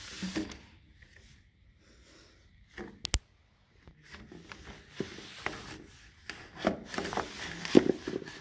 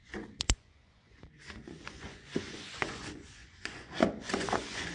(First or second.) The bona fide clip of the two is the first